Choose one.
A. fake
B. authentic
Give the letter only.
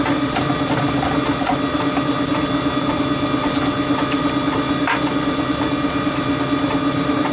B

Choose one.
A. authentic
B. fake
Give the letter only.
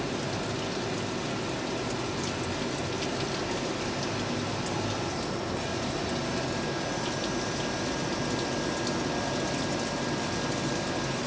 A